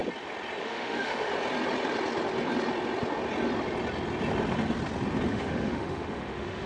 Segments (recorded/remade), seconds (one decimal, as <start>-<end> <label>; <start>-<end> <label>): 0.0-0.6 recorded; 0.6-1.3 remade; 1.3-5.3 recorded; 5.3-6.7 remade